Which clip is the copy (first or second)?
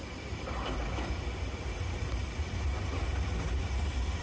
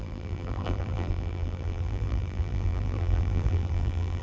second